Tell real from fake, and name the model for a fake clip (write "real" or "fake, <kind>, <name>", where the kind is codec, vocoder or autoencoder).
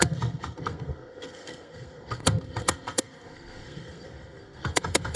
fake, codec, SNAC